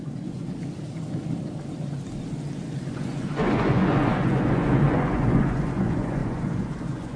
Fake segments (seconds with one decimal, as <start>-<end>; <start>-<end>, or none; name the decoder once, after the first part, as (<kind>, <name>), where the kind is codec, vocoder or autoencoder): 0.0-0.5 (vocoder, Vocos); 2.9-7.2